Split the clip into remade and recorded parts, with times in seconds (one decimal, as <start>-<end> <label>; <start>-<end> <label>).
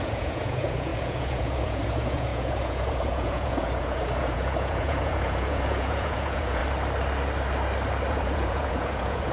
0.0-6.6 remade; 6.6-8.1 recorded; 8.1-9.3 remade